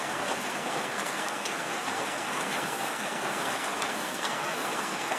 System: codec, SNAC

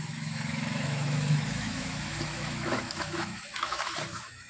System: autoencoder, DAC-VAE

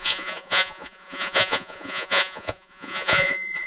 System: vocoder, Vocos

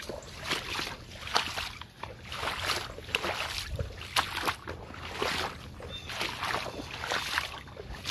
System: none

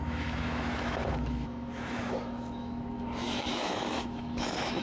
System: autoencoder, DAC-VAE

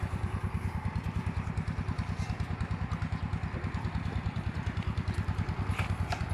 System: vocoder, BigVGAN v2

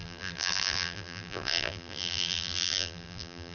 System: vocoder, BigVGAN v2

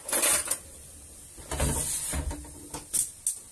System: none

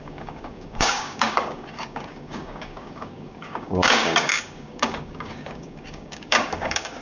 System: codec, DAC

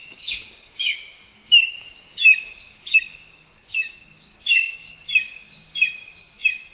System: codec, DAC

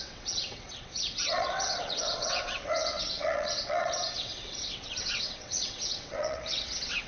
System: vocoder, WaveNeXt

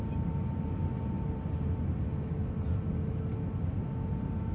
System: none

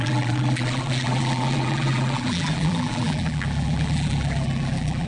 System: vocoder, BigVGAN v2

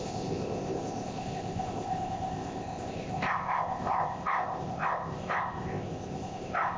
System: codec, ZipCodec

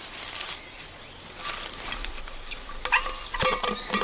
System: none